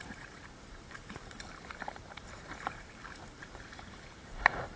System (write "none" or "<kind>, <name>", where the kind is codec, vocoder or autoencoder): vocoder, BigVGAN v2